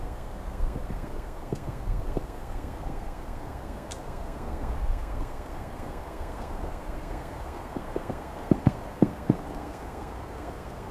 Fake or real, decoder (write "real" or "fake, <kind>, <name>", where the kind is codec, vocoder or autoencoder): fake, codec, SNAC